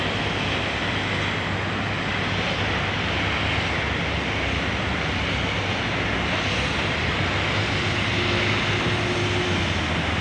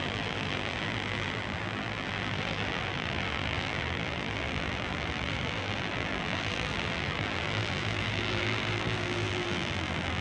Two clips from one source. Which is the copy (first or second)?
second